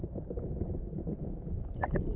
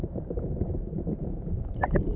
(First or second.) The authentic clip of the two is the first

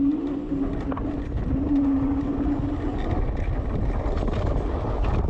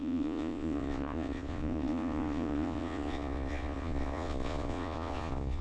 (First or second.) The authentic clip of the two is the first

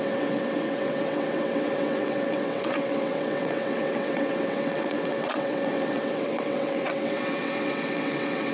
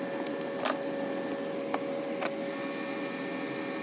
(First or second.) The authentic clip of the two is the second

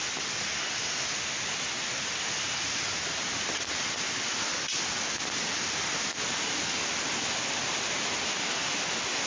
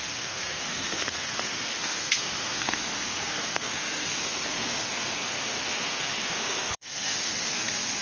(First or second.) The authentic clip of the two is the first